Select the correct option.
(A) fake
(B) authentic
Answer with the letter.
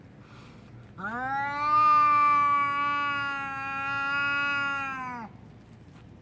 B